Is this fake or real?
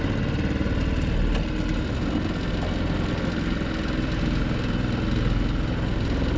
real